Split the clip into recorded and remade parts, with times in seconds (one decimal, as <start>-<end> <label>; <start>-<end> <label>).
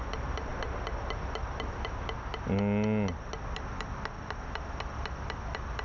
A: 0.0-5.8 recorded